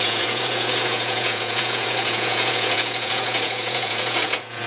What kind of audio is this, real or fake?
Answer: fake